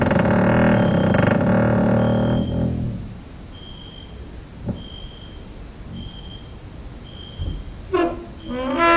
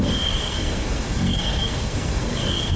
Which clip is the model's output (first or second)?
second